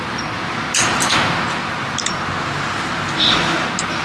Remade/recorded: recorded